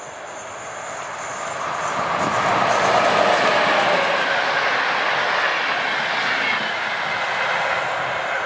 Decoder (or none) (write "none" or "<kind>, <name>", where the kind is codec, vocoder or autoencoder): none